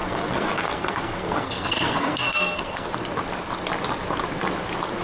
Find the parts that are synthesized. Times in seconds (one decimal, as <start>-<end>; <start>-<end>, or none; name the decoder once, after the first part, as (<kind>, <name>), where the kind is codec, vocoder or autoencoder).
0.0-2.9 (codec, SNAC)